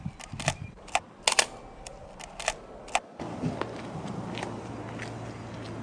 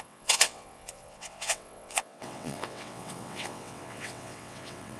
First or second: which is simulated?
second